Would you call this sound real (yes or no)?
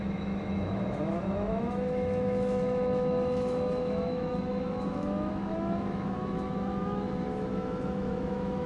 no